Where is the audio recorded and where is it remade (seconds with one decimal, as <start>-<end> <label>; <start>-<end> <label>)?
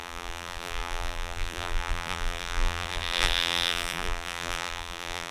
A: 0.0-5.3 remade